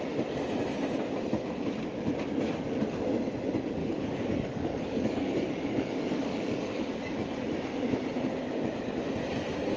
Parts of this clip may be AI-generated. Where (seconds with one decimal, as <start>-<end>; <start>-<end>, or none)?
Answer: 3.8-6.8